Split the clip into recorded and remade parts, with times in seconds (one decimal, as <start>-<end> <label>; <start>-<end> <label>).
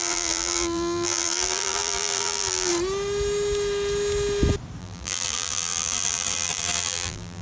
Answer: 0.0-2.7 remade; 2.7-4.8 recorded; 4.8-7.4 remade